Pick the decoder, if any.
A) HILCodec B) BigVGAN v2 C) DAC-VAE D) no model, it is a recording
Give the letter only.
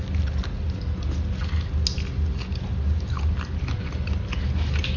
D